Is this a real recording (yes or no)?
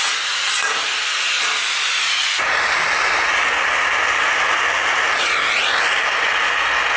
yes